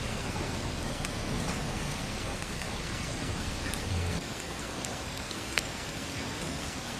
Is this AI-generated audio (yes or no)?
yes